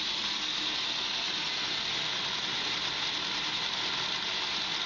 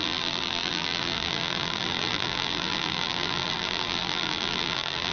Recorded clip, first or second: first